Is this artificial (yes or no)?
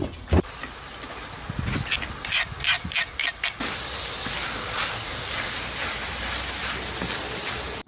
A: no